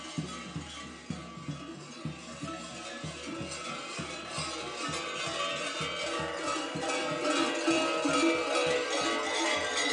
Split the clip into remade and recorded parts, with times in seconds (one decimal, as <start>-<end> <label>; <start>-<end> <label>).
0.0-9.9 recorded